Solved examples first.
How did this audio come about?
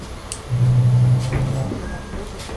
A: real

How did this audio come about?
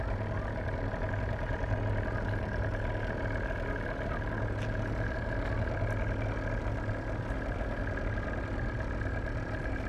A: real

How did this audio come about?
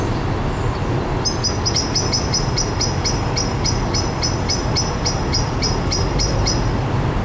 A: real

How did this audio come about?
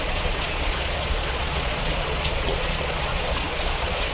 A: fake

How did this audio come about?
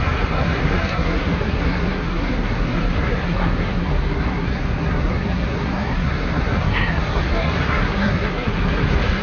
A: fake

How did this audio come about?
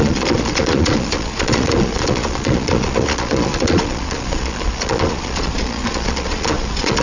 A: fake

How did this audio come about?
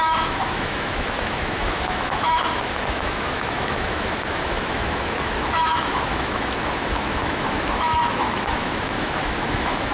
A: fake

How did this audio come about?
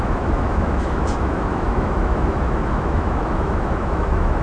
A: fake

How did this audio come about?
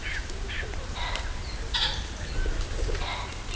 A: real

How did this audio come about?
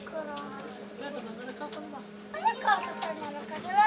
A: real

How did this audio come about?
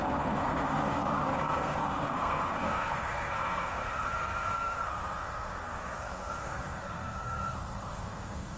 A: fake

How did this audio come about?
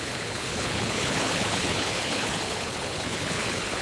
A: fake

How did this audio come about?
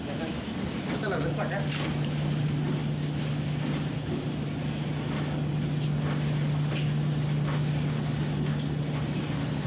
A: real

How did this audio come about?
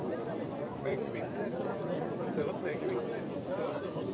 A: fake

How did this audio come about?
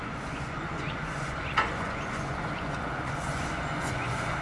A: fake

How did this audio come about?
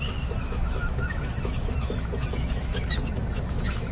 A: fake